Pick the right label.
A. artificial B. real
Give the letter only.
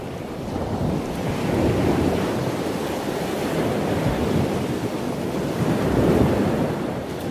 B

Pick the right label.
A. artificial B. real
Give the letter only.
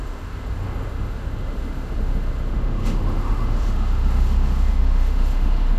A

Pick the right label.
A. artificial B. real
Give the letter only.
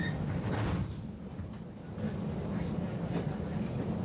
B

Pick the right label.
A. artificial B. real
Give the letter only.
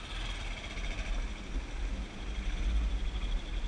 B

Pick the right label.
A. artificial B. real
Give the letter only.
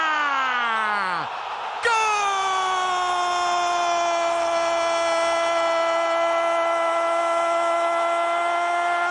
B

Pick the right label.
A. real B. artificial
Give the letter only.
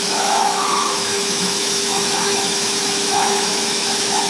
B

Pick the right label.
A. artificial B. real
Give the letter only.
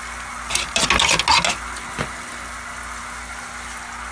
B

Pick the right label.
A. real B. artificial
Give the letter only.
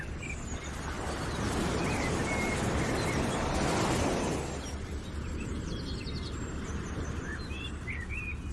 A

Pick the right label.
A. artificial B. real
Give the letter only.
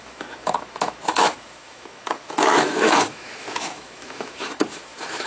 A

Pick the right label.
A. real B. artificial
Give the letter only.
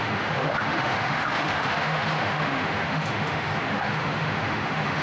B